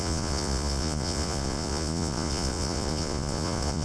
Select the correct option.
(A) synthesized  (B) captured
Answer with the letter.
A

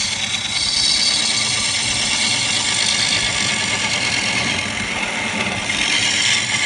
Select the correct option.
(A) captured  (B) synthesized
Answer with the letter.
A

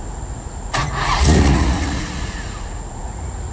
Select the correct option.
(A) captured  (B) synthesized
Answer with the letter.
B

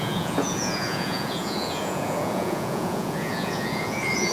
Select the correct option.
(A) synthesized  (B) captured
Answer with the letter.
A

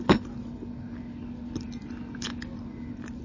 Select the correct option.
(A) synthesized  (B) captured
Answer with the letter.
B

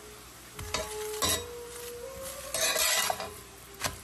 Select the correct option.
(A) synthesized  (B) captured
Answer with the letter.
B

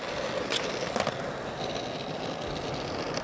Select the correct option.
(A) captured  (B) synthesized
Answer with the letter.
A